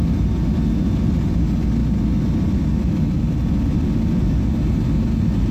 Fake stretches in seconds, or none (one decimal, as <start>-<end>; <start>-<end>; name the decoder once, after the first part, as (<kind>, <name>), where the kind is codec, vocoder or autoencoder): none